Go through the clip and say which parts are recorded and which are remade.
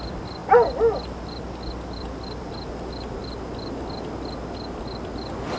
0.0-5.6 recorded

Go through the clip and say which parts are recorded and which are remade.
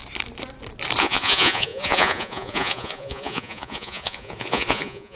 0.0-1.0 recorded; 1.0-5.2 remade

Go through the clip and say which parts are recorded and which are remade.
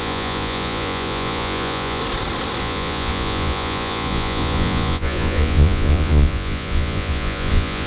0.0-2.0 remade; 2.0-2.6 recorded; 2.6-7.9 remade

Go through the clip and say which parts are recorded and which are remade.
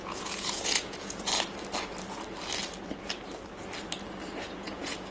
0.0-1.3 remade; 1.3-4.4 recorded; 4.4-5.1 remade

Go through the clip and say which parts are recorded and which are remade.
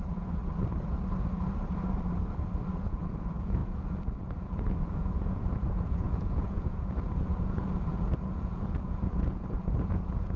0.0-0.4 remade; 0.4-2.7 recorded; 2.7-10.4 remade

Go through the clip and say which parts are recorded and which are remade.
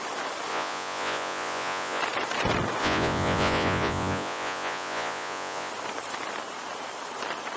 0.0-0.5 recorded; 0.5-2.0 remade; 2.0-2.8 recorded; 2.8-5.7 remade; 5.7-7.6 recorded